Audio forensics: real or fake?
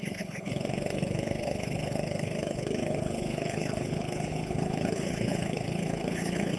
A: fake